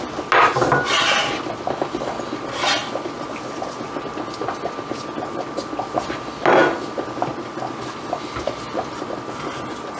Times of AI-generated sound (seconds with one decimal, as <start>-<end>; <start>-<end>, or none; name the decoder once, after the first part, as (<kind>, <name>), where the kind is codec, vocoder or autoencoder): none